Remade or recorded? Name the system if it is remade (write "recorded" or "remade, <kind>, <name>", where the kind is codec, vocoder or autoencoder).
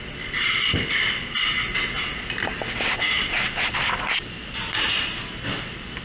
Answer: recorded